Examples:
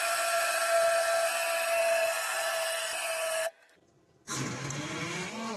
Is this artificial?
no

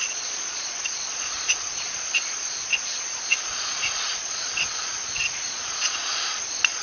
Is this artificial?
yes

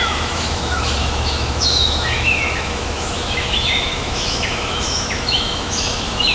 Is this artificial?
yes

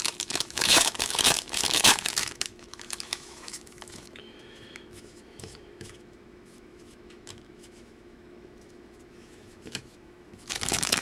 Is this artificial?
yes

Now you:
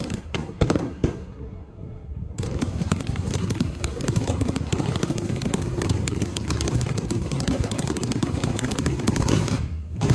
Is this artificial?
yes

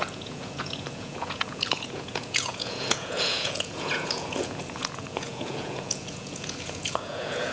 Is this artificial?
yes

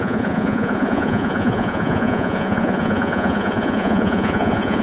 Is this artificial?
yes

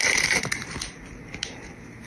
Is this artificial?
yes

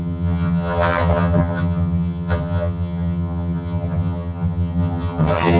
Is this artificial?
yes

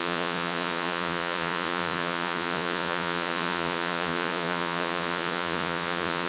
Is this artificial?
yes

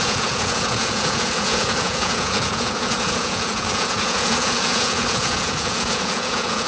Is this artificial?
yes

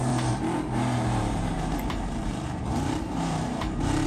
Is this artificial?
yes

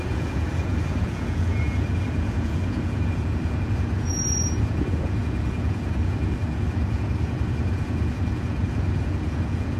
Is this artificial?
yes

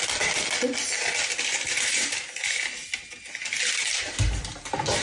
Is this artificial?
no